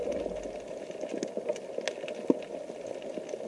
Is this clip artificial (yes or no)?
no